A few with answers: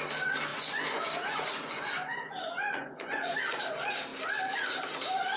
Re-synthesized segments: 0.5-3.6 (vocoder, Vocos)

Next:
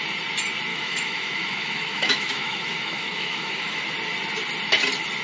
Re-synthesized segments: 0.7-3.8 (autoencoder, DAC-VAE)

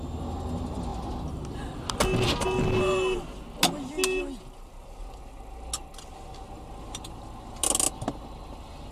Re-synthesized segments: none

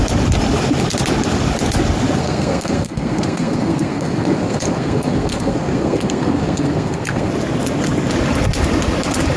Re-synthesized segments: 2.2-7.3 (codec, SNAC)

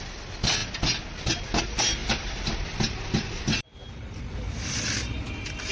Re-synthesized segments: 2.0-5.2 (vocoder, BigVGAN v2)

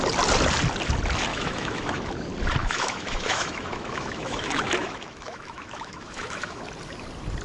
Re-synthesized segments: 1.3-2.1 (autoencoder, DAC-VAE); 2.6-6.6